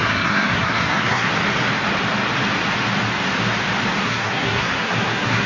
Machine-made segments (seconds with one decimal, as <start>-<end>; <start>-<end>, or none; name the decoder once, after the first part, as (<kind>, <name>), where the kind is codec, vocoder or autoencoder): 0.0-1.3 (codec, SNAC); 4.0-5.5